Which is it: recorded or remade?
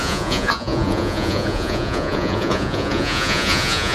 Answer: remade